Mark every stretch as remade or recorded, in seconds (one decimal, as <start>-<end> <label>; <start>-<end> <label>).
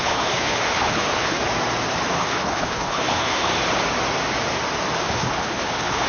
0.0-1.4 remade; 1.4-2.1 recorded; 2.1-3.5 remade; 3.5-5.0 recorded; 5.0-6.1 remade